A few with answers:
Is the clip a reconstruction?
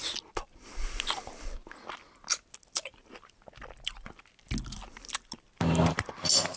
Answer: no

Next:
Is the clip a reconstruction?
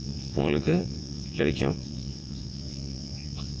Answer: yes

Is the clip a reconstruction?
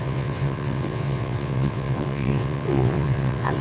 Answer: yes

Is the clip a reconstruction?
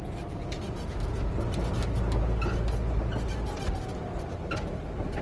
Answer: no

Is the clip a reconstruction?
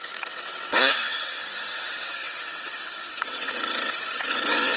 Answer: yes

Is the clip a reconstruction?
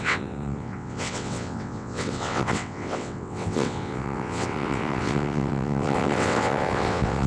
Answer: yes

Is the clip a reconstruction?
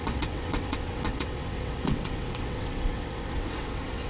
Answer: yes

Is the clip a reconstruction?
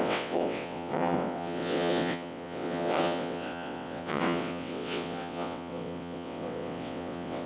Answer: yes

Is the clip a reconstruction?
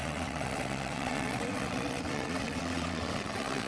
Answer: yes